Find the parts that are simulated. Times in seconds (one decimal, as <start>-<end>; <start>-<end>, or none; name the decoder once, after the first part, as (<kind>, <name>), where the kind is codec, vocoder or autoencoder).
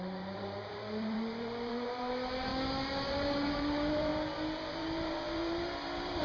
0.0-2.5 (vocoder, BigVGAN v2); 3.1-4.1; 4.7-6.2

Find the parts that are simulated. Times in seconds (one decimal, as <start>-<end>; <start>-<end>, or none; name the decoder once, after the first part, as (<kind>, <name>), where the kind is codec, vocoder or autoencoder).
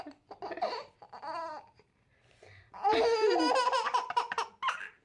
1.5-4.5 (vocoder, BigVGAN v2)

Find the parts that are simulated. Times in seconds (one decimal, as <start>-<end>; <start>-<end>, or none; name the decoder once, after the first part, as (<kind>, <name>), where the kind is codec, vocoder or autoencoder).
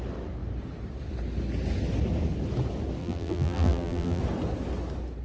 3.0-4.2 (vocoder, BigVGAN v2)